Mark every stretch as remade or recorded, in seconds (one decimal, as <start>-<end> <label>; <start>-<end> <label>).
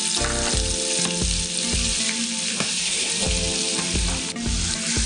0.0-2.5 recorded; 2.5-3.1 remade; 3.1-5.1 recorded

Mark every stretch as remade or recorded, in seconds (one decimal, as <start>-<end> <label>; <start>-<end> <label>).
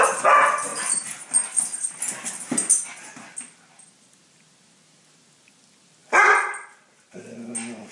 0.0-7.9 recorded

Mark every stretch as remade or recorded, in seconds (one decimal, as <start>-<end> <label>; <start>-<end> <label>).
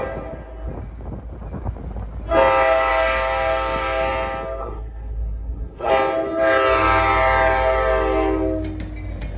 0.0-4.6 recorded; 4.6-5.9 remade; 5.9-9.4 recorded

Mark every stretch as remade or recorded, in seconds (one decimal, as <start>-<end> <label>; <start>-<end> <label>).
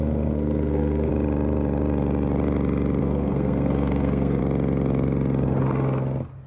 0.0-1.1 remade; 1.1-3.0 recorded; 3.0-4.4 remade; 4.4-6.5 recorded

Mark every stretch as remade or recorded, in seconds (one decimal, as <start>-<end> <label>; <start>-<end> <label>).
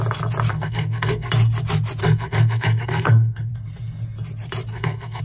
0.0-0.5 recorded; 0.5-1.3 remade; 1.3-2.0 recorded; 2.0-3.5 remade; 3.5-4.7 recorded; 4.7-5.2 remade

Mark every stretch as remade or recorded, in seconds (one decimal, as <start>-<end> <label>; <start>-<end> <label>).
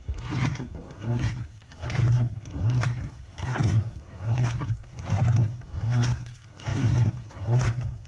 0.0-8.1 remade